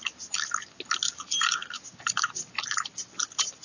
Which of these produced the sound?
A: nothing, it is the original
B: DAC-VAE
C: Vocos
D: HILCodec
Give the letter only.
A